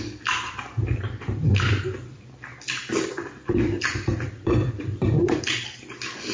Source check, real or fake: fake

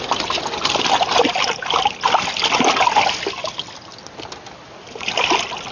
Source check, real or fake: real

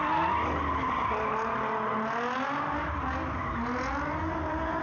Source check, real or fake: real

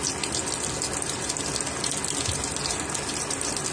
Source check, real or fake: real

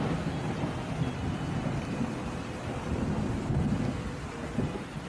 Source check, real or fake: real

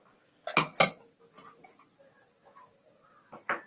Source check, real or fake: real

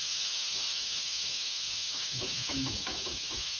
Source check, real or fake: fake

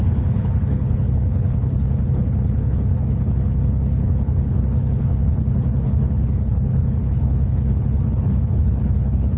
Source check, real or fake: fake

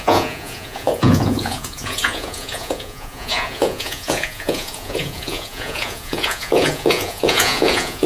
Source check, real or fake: fake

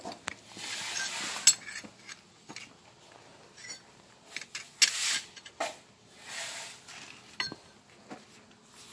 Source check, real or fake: real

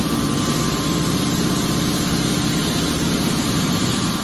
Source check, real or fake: real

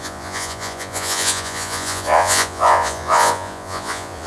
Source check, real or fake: fake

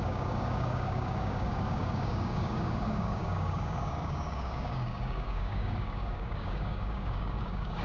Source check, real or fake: fake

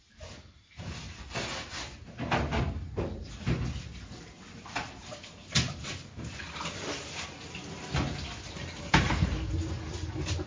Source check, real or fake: real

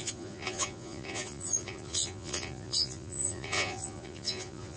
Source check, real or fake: fake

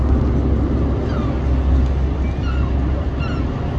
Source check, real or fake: real